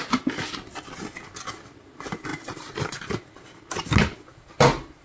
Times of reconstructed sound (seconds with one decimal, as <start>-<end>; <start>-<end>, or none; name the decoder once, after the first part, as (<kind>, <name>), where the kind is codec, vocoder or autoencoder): none